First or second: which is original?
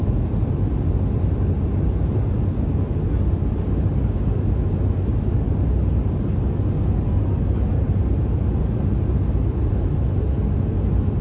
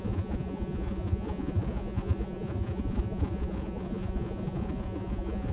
first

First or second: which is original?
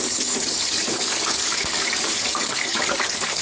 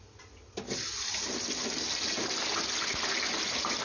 second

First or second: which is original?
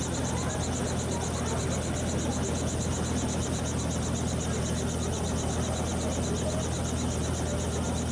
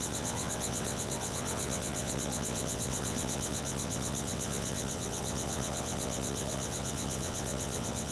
first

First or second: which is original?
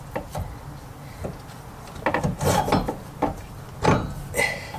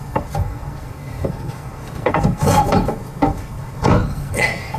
first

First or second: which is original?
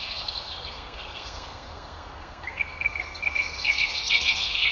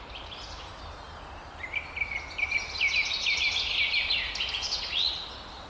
second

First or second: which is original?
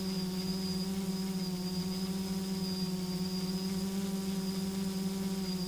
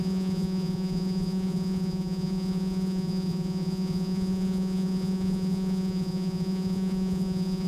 first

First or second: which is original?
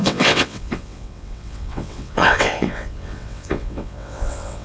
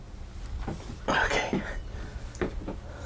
second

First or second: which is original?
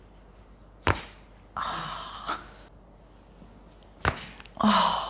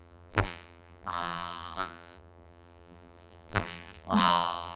first